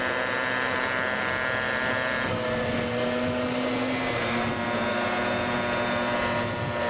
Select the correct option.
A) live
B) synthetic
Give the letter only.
A